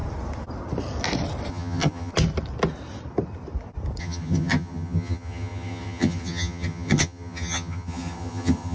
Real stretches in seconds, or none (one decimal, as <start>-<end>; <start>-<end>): 0.0-1.5; 2.1-4.0